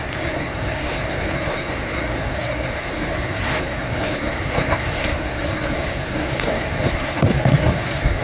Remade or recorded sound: remade